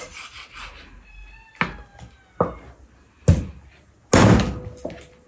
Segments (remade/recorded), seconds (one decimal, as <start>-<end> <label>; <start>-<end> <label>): 0.0-5.3 recorded